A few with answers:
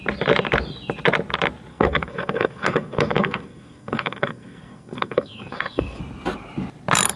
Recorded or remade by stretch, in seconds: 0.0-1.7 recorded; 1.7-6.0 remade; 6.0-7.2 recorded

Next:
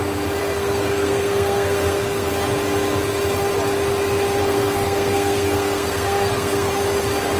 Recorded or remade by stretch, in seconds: 0.0-0.4 recorded; 0.4-2.3 remade; 2.3-4.4 recorded; 4.4-6.7 remade; 6.7-7.4 recorded

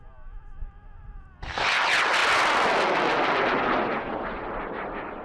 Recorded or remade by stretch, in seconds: 0.0-0.4 recorded; 0.4-1.3 remade; 1.3-5.2 recorded

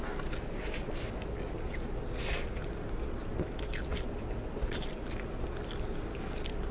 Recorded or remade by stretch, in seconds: 0.0-6.7 recorded